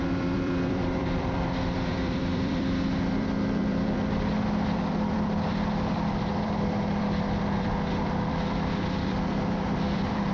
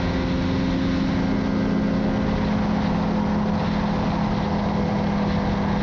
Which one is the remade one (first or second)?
first